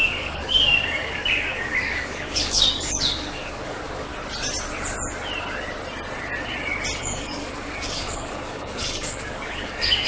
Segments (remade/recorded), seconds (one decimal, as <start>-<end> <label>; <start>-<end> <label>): 0.0-4.1 remade; 4.1-7.0 recorded; 7.0-10.1 remade